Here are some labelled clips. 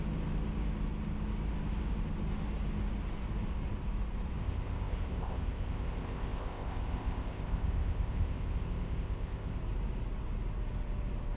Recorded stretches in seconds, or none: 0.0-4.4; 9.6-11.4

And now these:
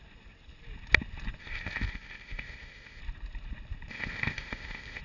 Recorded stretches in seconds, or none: 0.0-1.4; 3.0-3.9